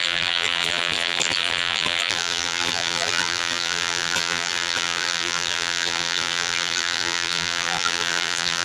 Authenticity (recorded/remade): remade